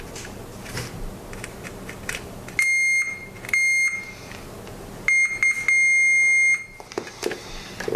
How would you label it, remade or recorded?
recorded